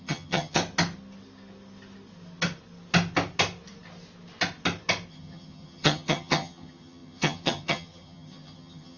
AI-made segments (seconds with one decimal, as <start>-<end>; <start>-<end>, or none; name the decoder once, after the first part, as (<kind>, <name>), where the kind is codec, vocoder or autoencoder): 0.0-0.6 (vocoder, HiFi-GAN); 5.1-9.0